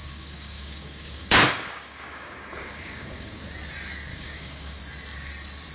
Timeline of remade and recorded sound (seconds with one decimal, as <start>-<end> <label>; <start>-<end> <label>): 0.0-3.4 remade; 3.4-4.1 recorded; 4.1-4.8 remade; 4.8-5.7 recorded

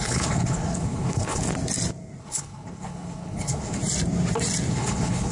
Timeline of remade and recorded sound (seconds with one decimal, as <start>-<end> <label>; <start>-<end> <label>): 0.0-1.4 remade; 1.4-2.2 recorded; 2.2-3.8 remade; 3.8-4.7 recorded; 4.7-5.3 remade

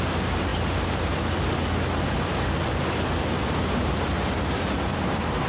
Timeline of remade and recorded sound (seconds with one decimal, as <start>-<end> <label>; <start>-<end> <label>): 0.0-0.5 recorded; 0.5-1.1 remade; 1.1-3.4 recorded; 3.4-4.1 remade; 4.1-4.9 recorded; 4.9-5.5 remade

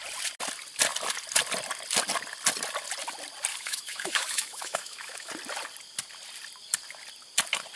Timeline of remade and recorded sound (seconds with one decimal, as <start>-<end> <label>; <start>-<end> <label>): 0.0-3.5 recorded; 3.5-5.3 remade; 5.3-7.8 recorded

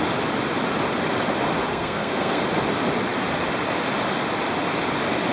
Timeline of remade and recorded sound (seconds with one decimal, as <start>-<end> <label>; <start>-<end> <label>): 0.0-1.7 recorded; 1.7-2.4 remade; 2.4-5.3 recorded

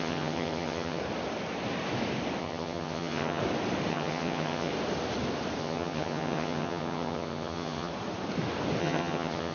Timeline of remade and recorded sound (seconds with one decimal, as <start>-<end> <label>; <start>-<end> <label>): 0.0-1.0 remade; 1.0-2.4 recorded; 2.4-3.4 remade; 3.4-3.9 recorded; 3.9-4.7 remade; 4.7-5.6 recorded; 5.6-7.9 remade; 7.9-8.8 recorded; 8.8-9.5 remade